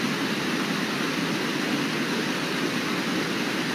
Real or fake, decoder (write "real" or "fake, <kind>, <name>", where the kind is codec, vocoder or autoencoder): real